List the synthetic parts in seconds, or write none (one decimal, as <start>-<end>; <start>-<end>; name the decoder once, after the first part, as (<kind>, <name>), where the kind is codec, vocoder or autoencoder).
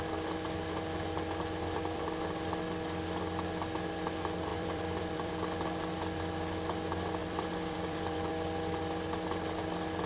4.5-5.3 (vocoder, BigVGAN v2); 7.2-8.3